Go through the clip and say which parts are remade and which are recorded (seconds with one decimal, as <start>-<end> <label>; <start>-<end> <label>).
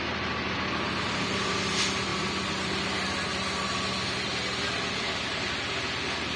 0.0-6.4 recorded